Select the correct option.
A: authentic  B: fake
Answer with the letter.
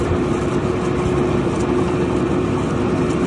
A